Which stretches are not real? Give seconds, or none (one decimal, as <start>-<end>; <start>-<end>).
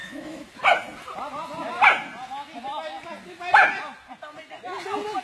0.0-0.5